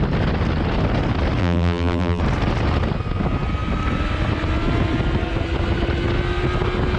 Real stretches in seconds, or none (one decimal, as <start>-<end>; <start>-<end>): 0.0-1.4; 2.2-7.0